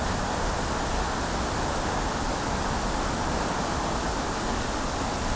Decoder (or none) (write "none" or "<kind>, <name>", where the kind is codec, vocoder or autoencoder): none